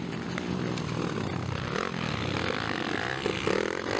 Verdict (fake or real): real